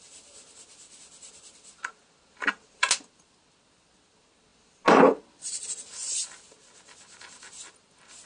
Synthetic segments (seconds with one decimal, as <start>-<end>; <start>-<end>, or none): none